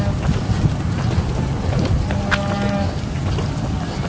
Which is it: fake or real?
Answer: real